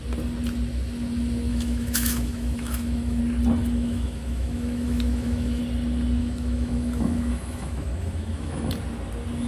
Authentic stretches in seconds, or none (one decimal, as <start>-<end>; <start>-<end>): 0.0-1.5; 3.2-3.6; 5.6-6.2; 8.7-9.5